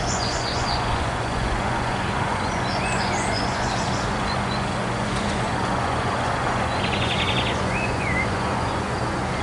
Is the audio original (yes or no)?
no